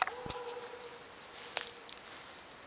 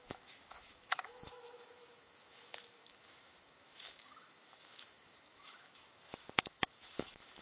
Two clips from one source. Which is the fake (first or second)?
second